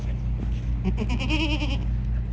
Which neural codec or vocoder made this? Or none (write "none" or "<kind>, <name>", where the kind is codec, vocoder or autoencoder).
none